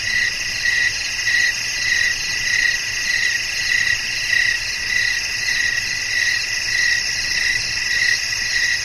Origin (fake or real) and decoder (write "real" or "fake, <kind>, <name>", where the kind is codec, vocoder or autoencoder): real